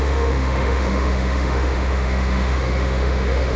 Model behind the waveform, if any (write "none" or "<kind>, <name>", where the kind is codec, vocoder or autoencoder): autoencoder, DAC-VAE